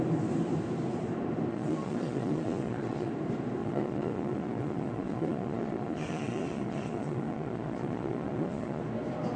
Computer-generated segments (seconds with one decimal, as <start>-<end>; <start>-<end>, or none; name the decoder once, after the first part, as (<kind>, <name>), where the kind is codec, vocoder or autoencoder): 1.5-3.1 (vocoder, Vocos); 3.6-8.8